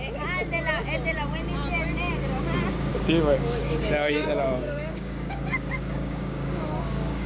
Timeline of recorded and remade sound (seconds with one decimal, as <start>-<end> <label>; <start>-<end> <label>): 0.0-2.9 recorded; 2.9-7.3 remade